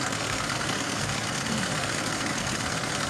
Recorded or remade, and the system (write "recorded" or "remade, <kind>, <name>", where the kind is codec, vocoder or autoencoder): remade, codec, SNAC